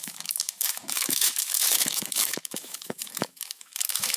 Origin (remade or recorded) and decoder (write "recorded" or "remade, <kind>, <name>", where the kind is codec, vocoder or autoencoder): remade, autoencoder, DAC-VAE